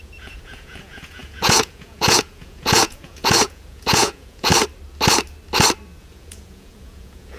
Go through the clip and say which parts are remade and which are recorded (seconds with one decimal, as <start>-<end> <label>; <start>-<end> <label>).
0.0-4.5 remade; 4.5-6.0 recorded; 6.0-7.4 remade